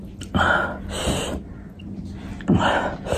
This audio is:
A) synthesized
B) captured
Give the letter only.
B